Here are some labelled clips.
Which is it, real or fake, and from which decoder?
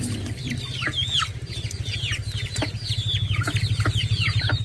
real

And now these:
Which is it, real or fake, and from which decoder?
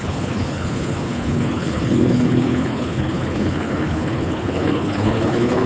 fake, codec, HILCodec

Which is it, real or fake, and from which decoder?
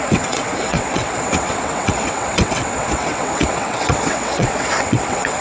fake, vocoder, WaveNeXt